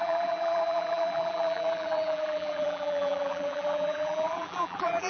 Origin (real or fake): fake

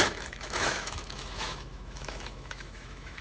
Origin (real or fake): fake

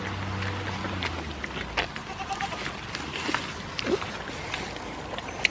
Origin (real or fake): real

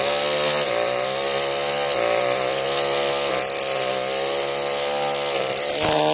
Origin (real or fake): real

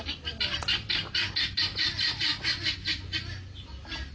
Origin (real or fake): real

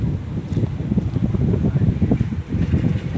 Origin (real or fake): real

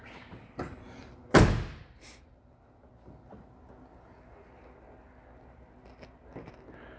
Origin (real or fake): real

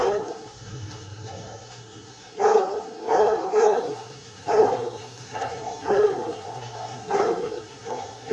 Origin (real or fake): fake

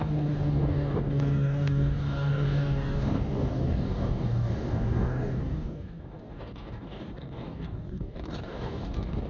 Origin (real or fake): fake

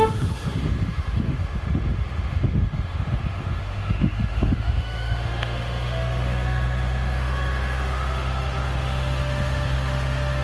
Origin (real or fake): fake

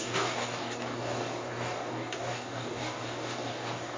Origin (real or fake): fake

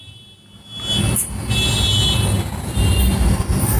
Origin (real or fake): real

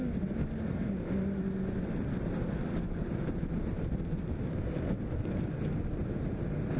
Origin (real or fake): real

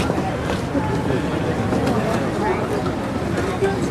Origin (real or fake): real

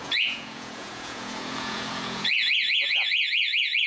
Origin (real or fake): fake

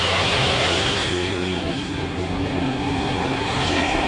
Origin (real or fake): fake